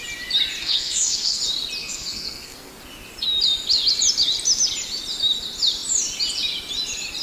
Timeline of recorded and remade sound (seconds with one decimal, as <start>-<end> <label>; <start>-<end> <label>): 0.0-0.6 recorded; 0.6-1.4 remade; 1.4-1.8 recorded; 1.8-2.7 remade; 2.7-7.2 recorded

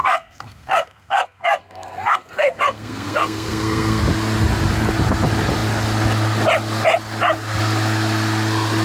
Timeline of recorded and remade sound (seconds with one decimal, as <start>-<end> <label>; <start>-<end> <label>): 0.0-4.0 remade; 4.0-8.8 recorded